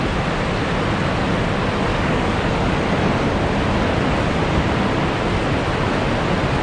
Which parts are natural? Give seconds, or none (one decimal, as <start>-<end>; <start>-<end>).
0.0-1.9; 2.5-6.6